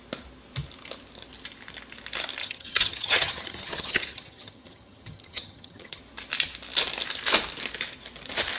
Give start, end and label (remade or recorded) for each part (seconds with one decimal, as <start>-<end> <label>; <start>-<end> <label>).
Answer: 0.0-2.4 recorded; 2.4-6.0 remade; 6.0-8.6 recorded